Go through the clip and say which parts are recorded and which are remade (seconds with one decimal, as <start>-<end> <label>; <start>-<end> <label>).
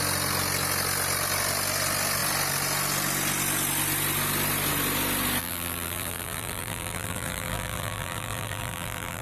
0.0-5.4 recorded; 5.4-9.2 remade